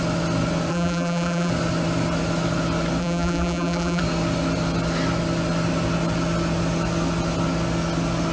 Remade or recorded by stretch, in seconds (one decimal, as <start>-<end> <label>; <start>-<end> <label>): 0.0-0.7 recorded; 0.7-1.5 remade; 1.5-3.0 recorded; 3.0-4.0 remade; 4.0-8.3 recorded